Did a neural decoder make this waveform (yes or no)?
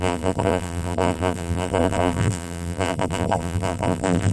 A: yes